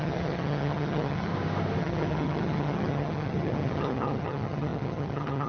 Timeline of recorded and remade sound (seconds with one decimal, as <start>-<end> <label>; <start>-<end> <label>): 0.0-1.3 remade; 1.3-1.8 recorded; 1.8-5.5 remade